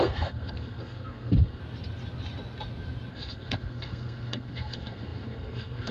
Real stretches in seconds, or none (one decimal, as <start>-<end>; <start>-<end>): 1.6-3.1